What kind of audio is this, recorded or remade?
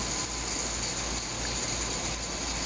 recorded